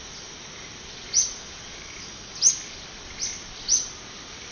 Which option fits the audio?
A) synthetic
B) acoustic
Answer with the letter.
B